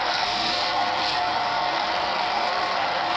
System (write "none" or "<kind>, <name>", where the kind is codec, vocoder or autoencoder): codec, SNAC